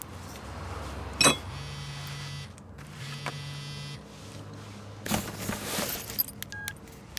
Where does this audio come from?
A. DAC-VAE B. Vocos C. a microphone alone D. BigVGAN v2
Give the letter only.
C